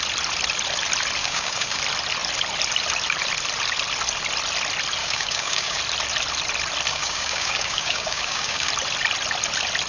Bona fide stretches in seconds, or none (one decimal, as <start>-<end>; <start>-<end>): 0.0-1.2; 1.8-5.0; 5.8-6.9; 8.7-9.9